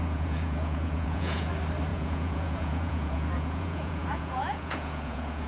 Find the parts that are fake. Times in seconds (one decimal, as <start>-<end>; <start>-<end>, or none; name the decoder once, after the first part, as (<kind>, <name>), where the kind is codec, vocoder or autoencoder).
0.0-1.5 (vocoder, Vocos); 1.9-5.5